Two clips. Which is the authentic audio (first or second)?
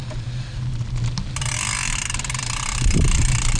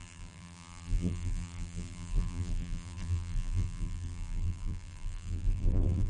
first